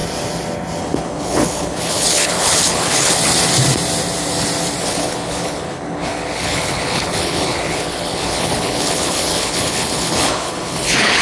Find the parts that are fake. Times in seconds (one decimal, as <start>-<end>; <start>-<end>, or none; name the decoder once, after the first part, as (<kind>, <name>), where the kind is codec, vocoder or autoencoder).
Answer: 0.8-3.2 (codec, HILCodec); 4.8-11.2